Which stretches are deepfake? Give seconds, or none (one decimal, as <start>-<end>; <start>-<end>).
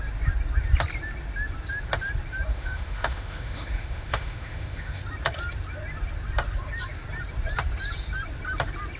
2.5-5.0